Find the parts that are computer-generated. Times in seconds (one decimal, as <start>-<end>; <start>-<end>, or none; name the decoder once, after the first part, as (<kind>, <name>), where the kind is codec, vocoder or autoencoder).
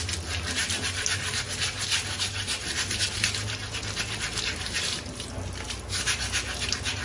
none